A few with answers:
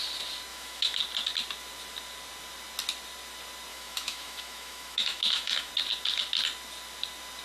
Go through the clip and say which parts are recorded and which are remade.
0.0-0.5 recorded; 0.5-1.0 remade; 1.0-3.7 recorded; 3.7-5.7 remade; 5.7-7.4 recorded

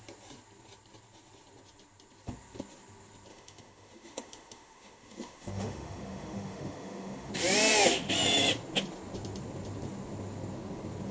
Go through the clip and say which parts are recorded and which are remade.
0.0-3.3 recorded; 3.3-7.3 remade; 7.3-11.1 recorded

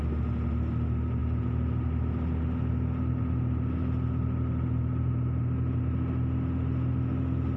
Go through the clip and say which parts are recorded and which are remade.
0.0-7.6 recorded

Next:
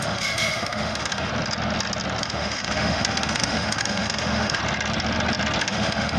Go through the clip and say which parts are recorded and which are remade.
0.0-1.3 remade; 1.3-2.2 recorded; 2.2-4.6 remade; 4.6-5.6 recorded; 5.6-6.2 remade

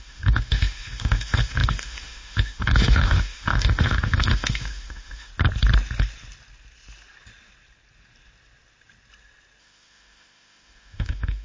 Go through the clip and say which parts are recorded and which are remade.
0.0-5.3 remade; 5.3-9.6 recorded; 9.6-11.4 remade